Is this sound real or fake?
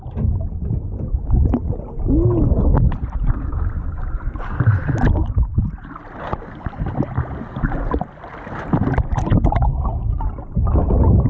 real